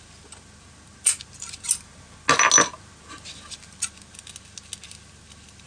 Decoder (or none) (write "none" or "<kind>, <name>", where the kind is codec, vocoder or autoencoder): none